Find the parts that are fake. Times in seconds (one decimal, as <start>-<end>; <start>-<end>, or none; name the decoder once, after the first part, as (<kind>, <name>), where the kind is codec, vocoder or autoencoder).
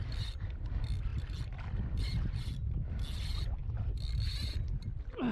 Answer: none